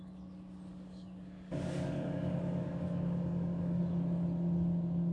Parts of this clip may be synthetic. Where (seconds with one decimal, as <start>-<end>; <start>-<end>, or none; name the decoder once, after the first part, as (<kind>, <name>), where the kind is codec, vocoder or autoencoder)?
0.7-3.8 (codec, DAC)